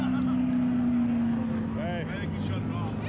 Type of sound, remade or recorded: recorded